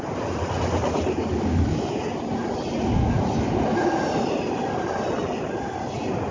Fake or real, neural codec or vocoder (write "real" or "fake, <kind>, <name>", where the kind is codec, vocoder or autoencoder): real